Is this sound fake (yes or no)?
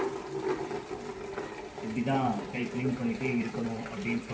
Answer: yes